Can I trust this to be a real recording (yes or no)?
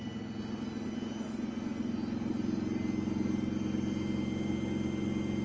yes